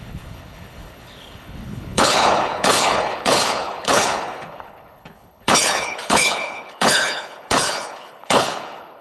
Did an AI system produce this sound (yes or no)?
yes